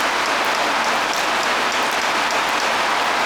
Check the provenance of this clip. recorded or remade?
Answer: recorded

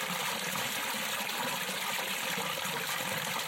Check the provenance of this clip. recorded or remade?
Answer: recorded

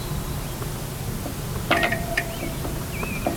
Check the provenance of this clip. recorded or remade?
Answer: recorded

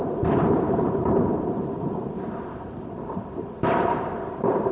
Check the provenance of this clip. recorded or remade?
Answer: remade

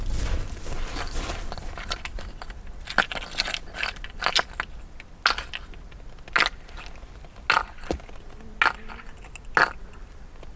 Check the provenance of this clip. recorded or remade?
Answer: recorded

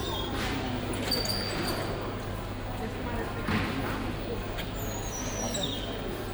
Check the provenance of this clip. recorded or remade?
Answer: recorded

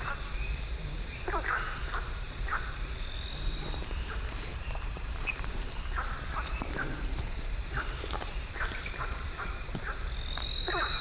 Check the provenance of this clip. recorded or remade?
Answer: remade